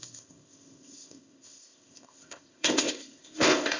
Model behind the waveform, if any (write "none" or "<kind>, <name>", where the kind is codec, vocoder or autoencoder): codec, ZipCodec